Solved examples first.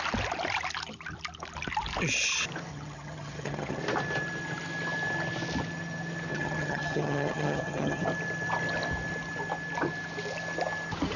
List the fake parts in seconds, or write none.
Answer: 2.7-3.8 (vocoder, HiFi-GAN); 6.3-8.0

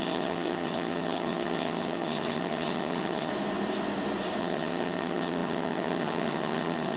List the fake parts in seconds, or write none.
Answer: 0.0-3.3 (vocoder, HiFi-GAN); 4.4-7.0